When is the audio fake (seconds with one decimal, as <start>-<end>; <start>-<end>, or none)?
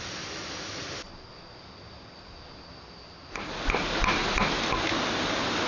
none